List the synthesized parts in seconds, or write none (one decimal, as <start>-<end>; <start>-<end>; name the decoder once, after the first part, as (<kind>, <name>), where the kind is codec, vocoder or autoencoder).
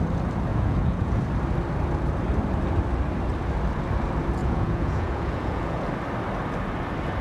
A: 0.5-1.2 (vocoder, Vocos); 4.4-5.9